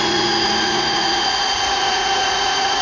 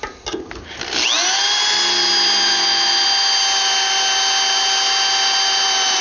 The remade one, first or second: first